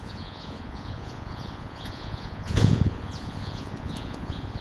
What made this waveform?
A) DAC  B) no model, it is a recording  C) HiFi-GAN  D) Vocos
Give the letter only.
D